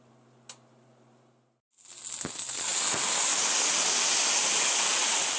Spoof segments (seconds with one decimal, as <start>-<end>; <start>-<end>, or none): none